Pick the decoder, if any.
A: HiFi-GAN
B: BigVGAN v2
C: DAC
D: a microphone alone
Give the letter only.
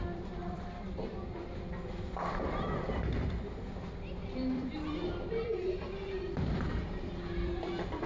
B